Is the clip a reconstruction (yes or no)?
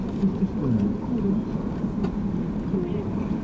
no